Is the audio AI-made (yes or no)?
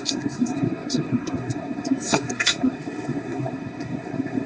yes